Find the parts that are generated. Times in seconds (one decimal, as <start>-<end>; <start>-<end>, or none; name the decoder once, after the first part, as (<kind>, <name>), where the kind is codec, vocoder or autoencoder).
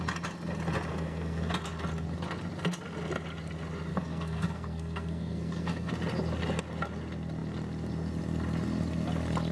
0.9-1.5 (codec, SNAC); 3.9-5.9